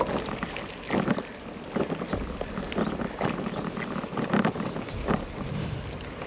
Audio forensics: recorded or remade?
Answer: recorded